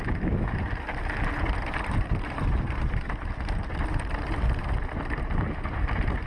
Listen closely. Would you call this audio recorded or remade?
recorded